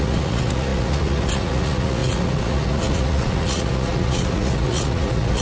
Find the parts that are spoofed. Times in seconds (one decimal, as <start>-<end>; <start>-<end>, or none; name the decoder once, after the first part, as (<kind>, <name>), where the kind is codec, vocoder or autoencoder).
0.0-5.4 (vocoder, Vocos)